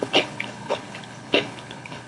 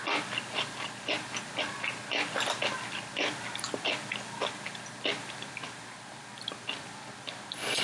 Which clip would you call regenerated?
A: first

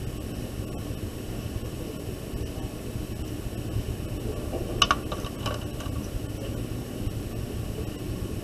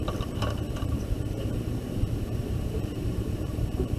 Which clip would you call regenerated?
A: second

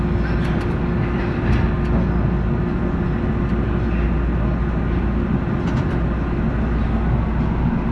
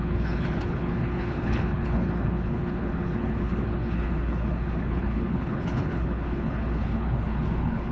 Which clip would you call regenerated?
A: second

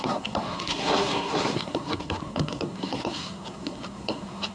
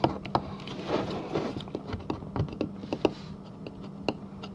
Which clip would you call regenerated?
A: first